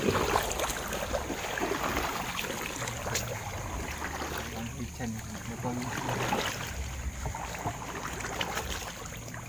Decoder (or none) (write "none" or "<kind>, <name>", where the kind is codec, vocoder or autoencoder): none